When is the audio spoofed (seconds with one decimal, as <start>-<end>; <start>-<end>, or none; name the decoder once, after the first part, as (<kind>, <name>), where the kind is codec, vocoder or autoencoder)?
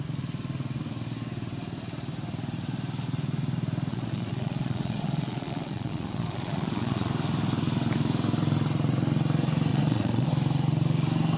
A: 3.9-7.1 (vocoder, Vocos); 9.7-10.3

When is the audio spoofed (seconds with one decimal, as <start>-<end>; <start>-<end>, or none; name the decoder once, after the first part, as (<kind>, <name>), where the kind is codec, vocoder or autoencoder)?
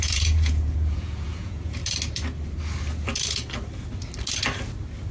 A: 0.0-1.8 (vocoder, Vocos)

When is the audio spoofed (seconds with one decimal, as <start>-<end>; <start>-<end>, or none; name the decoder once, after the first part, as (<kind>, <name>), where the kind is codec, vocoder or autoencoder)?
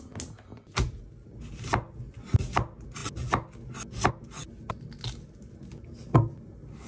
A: none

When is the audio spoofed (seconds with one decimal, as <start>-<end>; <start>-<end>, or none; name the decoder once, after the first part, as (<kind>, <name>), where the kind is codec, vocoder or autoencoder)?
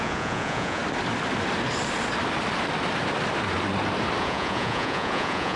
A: 0.0-0.8 (vocoder, Vocos); 4.2-5.6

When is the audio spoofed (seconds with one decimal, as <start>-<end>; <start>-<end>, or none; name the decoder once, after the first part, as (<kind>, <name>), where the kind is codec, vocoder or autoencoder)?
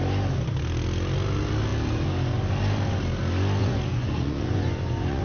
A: 3.6-5.2 (vocoder, Vocos)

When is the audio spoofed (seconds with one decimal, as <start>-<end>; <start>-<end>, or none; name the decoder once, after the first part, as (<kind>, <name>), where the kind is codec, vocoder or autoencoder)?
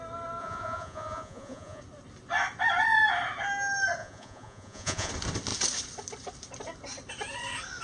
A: 0.4-1.8 (vocoder, Vocos); 4.0-5.1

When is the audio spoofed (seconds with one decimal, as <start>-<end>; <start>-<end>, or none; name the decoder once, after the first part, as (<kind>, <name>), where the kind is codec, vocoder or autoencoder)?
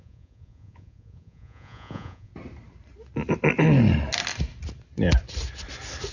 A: 0.0-2.3 (vocoder, Vocos)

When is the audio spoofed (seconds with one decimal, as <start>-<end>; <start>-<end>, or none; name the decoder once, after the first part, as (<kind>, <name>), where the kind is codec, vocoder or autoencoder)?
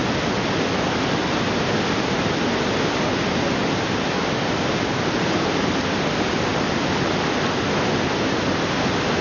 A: none